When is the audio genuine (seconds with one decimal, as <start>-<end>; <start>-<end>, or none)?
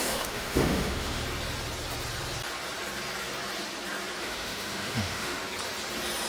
1.2-4.2; 5.4-6.3